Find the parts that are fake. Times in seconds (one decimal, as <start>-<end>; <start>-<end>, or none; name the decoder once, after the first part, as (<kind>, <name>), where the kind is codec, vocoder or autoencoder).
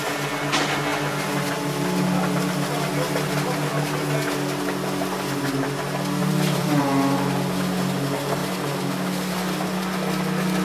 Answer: 6.2-6.8 (vocoder, BigVGAN v2)